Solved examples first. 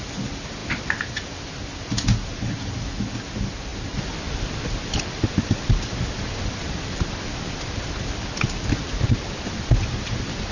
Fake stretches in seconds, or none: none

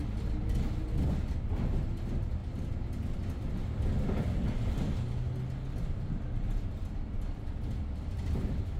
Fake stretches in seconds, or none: none